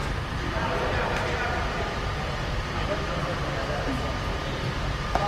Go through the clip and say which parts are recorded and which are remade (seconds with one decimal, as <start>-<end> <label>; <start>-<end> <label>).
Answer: 0.0-5.3 recorded

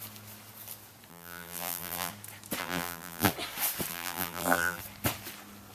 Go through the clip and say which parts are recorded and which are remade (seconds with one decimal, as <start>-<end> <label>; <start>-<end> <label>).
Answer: 0.0-1.1 recorded; 1.1-2.1 remade; 2.1-2.6 recorded; 2.6-3.3 remade; 3.3-3.9 recorded; 3.9-4.8 remade; 4.8-5.7 recorded

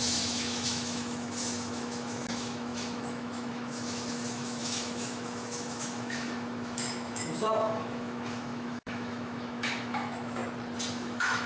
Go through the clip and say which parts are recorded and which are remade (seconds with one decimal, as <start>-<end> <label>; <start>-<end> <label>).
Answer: 0.0-10.4 remade; 10.4-10.9 recorded; 10.9-11.5 remade

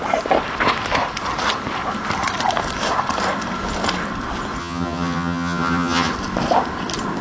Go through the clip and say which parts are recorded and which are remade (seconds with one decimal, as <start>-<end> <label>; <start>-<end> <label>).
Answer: 0.0-4.6 recorded; 4.6-6.1 remade; 6.1-7.2 recorded

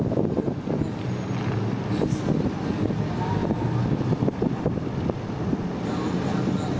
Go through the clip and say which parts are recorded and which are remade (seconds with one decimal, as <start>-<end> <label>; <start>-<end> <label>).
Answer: 0.0-3.4 recorded; 3.4-5.7 remade; 5.7-6.8 recorded